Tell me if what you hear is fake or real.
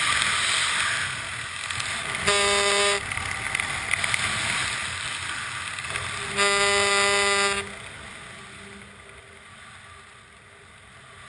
real